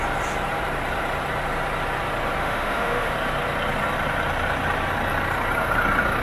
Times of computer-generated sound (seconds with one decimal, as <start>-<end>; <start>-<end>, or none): 2.4-3.1